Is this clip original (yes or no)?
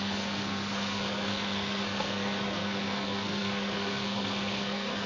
no